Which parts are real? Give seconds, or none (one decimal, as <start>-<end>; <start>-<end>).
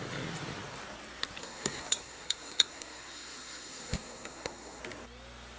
0.0-1.4; 4.8-5.6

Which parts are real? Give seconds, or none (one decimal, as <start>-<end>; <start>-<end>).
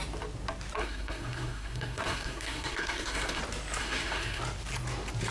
0.0-0.8; 3.4-3.8; 4.4-5.3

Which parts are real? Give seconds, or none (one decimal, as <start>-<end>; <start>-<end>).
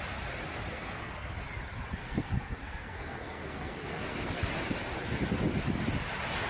0.0-0.7; 1.4-2.0; 4.5-6.5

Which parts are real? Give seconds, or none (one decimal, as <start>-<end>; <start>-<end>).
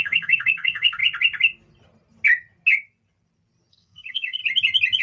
1.0-3.7; 4.4-5.0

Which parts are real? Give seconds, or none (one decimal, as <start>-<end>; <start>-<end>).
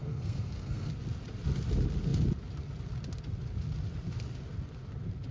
0.9-5.3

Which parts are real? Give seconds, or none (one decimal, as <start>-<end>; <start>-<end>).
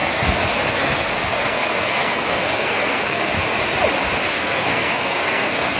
3.3-4.3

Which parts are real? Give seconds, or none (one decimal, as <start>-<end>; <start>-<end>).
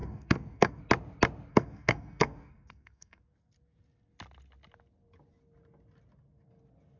0.8-1.5; 3.2-7.0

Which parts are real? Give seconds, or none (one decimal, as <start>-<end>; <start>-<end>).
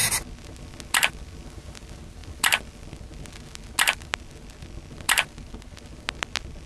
0.0-6.7